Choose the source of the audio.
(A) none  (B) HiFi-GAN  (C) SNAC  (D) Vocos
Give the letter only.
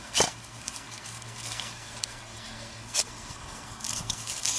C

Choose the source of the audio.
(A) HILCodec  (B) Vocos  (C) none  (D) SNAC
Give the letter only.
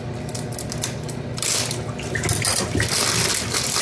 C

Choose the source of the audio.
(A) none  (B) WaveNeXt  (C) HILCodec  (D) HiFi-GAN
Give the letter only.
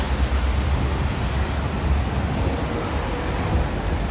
A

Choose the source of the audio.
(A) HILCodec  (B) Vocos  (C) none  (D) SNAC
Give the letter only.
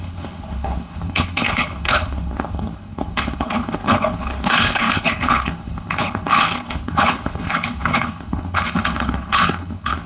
A